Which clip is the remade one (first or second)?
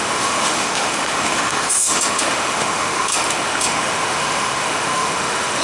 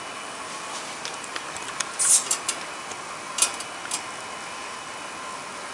first